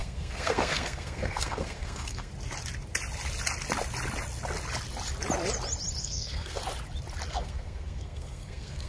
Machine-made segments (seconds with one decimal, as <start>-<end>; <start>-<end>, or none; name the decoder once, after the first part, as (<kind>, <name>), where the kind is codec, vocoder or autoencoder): 0.0-2.3 (codec, SNAC); 6.0-6.6; 7.3-8.9